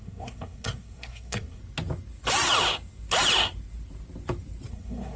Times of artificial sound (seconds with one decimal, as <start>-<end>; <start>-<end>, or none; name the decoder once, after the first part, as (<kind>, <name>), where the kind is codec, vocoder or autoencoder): 0.0-1.6 (codec, SNAC); 4.7-5.2